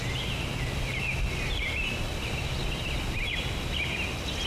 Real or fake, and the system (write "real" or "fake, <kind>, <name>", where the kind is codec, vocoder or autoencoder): real